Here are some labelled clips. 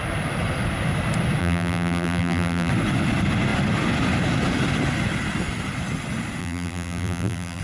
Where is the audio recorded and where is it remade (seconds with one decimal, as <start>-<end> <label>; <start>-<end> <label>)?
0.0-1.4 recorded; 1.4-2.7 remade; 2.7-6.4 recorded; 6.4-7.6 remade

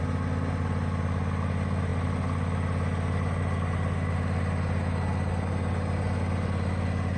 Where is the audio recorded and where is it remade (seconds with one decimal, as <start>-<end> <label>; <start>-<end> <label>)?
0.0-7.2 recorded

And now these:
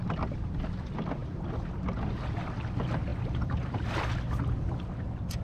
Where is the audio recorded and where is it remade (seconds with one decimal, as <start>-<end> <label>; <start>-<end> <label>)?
0.0-1.2 recorded; 1.2-1.9 remade; 1.9-3.1 recorded; 3.1-4.7 remade; 4.7-5.4 recorded

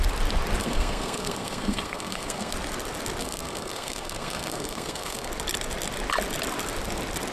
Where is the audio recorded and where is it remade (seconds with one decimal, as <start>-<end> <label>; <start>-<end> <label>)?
0.0-0.6 recorded; 0.6-2.5 remade; 2.5-3.2 recorded; 3.2-5.3 remade; 5.3-7.3 recorded

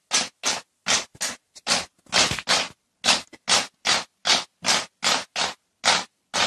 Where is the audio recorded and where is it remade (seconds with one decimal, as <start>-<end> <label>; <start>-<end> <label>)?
0.0-6.5 recorded

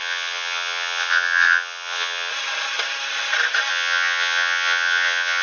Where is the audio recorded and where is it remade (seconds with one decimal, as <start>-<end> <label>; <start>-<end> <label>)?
0.0-2.3 remade; 2.3-3.7 recorded; 3.7-5.4 remade

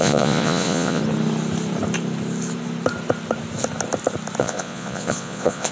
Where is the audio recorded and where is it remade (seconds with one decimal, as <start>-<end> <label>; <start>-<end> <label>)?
0.0-1.0 remade; 1.0-4.4 recorded; 4.4-5.7 remade

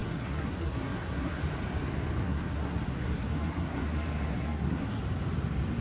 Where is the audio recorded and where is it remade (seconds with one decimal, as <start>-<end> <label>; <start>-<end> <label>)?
0.0-1.4 remade; 1.4-2.2 recorded; 2.2-5.0 remade; 5.0-5.8 recorded